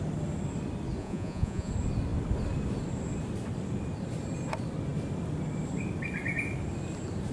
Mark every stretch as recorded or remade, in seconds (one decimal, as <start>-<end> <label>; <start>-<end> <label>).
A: 0.0-1.0 recorded; 1.0-1.7 remade; 1.7-7.3 recorded